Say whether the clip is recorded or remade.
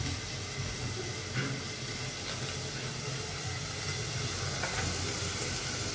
recorded